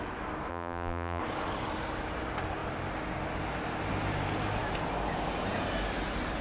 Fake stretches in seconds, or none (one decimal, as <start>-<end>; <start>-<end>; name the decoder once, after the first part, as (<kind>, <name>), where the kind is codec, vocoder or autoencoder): 0.5-1.2 (vocoder, BigVGAN v2)

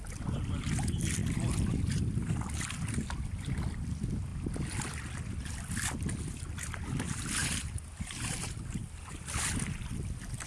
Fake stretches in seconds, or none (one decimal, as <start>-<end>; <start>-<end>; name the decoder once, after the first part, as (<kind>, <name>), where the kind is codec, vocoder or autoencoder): 7.4-8.8 (vocoder, BigVGAN v2)

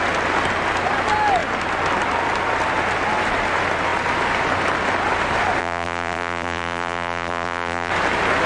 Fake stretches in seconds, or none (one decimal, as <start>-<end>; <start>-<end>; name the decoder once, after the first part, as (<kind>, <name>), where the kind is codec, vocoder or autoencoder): 5.6-7.9 (vocoder, BigVGAN v2)

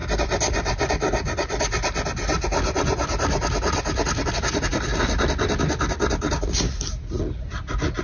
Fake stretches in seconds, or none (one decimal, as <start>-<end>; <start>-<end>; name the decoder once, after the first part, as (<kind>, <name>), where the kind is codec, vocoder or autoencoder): none

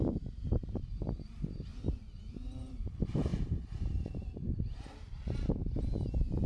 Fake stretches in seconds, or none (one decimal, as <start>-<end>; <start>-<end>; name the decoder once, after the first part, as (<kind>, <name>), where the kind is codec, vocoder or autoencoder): 0.0-1.7 (vocoder, BigVGAN v2); 2.3-5.6

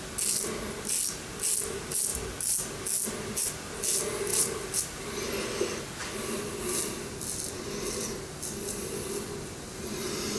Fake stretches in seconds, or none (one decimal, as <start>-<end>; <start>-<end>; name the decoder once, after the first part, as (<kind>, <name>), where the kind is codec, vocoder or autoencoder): 4.3-5.3 (vocoder, BigVGAN v2)

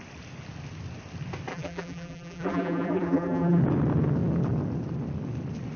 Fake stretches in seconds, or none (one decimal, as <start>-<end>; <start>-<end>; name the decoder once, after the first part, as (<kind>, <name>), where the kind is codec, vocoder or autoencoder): 1.5-3.6 (vocoder, BigVGAN v2)

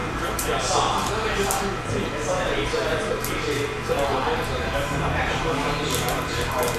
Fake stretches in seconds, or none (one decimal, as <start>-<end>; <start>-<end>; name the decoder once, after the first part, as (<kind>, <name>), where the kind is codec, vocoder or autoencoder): 4.1-5.4 (vocoder, BigVGAN v2)